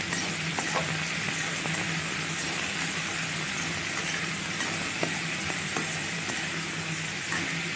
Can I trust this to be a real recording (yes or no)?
yes